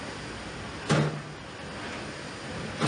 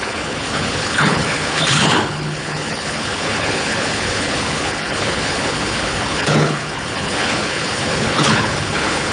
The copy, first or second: second